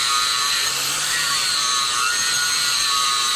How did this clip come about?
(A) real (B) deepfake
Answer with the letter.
B